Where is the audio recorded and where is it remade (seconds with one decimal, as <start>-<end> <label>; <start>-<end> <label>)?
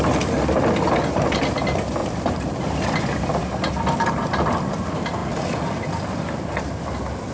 0.0-2.0 recorded; 2.0-3.7 remade; 3.7-7.3 recorded